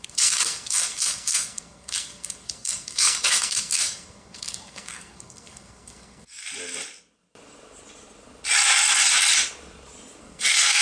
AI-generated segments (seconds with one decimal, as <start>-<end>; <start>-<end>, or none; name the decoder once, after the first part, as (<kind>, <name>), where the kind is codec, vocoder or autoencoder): 0.0-6.4 (codec, SNAC); 10.2-10.8